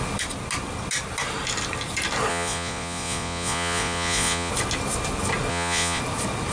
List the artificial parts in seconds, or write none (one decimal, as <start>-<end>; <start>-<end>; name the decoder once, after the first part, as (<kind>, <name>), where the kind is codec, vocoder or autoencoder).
2.3-4.5 (vocoder, Vocos); 5.5-6.0